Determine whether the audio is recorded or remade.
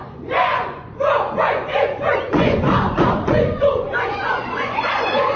remade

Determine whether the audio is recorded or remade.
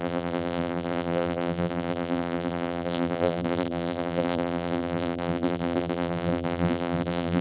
remade